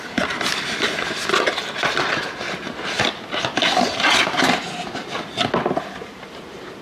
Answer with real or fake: real